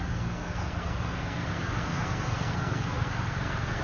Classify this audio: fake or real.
fake